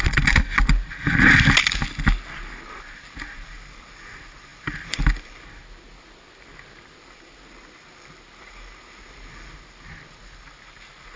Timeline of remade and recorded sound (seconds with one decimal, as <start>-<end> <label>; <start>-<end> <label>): 0.0-11.2 recorded